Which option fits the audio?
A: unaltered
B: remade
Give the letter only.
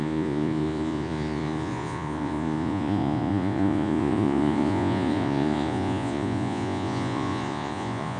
B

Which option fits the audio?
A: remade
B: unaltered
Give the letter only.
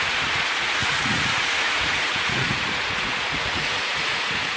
A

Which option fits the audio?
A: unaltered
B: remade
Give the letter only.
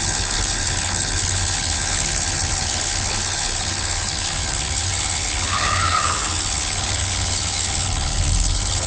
B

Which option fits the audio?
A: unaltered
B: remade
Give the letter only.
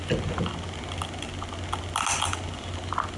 A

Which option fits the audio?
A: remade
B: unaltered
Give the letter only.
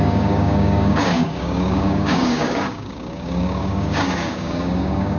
A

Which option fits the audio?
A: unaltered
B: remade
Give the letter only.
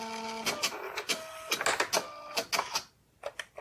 A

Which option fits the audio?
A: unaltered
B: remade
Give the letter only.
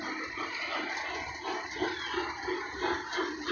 A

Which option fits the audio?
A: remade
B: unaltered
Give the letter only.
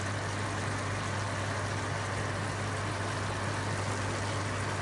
B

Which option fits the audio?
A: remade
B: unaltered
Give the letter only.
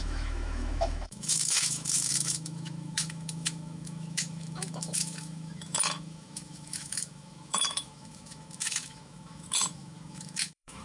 A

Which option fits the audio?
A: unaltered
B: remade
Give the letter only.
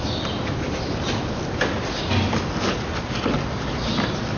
A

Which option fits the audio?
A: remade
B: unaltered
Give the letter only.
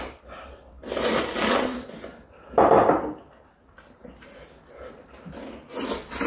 B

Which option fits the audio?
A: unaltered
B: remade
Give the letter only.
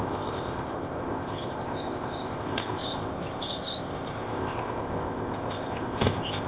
B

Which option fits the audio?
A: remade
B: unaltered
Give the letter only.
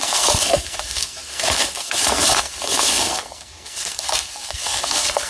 A